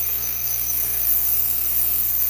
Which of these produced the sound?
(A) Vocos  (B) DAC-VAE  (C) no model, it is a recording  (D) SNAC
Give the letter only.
D